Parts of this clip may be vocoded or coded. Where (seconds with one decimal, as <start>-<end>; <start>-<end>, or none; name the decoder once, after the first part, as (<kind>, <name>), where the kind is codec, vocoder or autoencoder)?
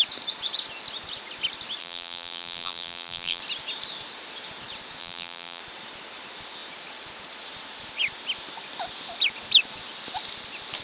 1.8-3.4 (vocoder, BigVGAN v2); 5.0-5.6